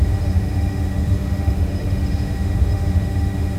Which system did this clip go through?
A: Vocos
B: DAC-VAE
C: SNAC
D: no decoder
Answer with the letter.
B